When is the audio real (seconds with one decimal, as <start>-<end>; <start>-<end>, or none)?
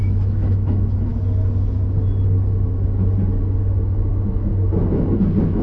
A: 1.1-4.1; 4.5-5.6